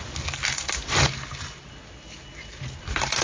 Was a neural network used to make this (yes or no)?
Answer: no